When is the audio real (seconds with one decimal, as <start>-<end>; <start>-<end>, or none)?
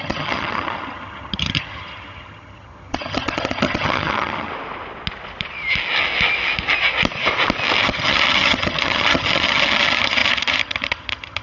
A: 4.5-7.8